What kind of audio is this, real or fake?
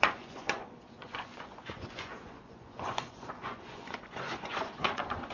fake